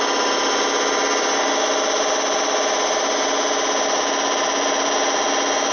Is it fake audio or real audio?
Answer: real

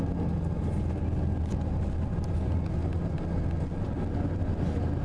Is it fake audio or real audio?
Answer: real